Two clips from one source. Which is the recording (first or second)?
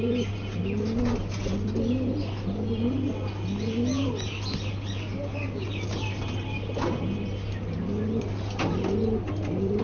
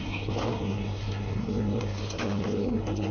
first